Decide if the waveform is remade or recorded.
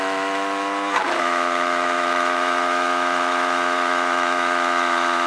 remade